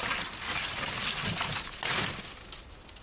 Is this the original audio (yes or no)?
yes